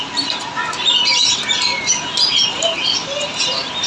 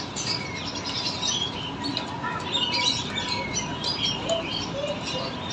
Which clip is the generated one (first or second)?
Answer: second